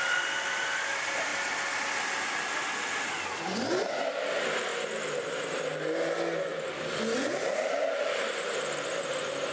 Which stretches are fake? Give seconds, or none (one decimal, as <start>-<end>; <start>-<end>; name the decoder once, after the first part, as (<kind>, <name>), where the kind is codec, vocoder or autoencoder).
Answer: 4.7-5.4 (vocoder, BigVGAN v2); 6.5-9.0